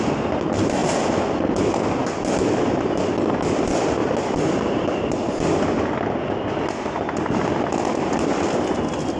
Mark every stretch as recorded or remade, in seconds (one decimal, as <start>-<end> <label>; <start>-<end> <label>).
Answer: 0.0-9.2 recorded